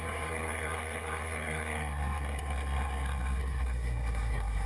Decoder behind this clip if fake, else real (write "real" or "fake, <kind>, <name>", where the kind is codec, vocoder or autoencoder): fake, codec, SNAC